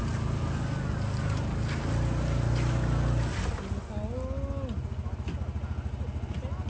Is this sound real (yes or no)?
yes